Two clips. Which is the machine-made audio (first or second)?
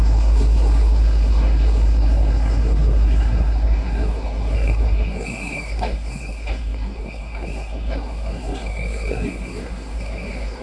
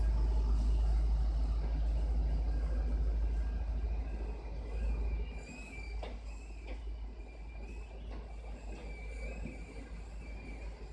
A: first